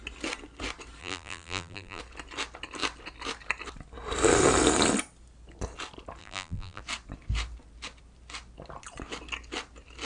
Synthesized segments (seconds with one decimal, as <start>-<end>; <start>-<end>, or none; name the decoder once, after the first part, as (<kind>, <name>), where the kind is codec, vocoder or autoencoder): 1.0-2.0 (vocoder, BigVGAN v2); 6.2-6.8